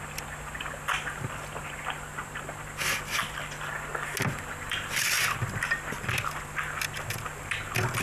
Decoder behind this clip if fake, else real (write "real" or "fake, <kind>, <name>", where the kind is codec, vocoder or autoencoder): real